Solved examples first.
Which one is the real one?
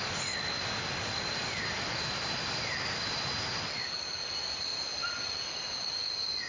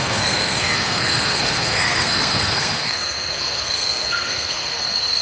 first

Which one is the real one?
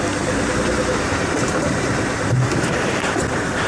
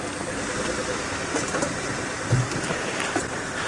first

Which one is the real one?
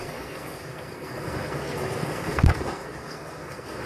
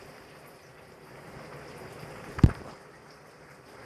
second